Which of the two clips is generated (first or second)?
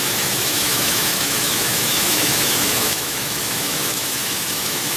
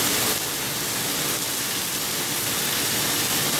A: first